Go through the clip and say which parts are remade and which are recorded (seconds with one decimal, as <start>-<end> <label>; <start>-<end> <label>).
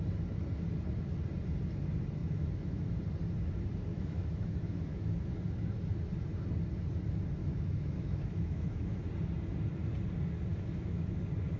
0.0-2.2 recorded; 2.2-3.0 remade; 3.0-3.9 recorded; 3.9-5.3 remade; 5.3-7.4 recorded; 7.4-9.1 remade; 9.1-10.5 recorded; 10.5-11.2 remade; 11.2-11.6 recorded